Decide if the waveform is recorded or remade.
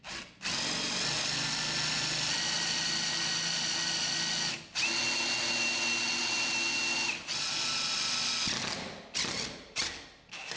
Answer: recorded